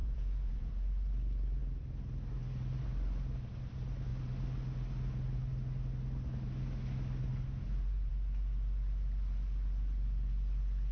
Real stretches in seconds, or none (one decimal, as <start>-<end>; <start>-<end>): 0.7-10.9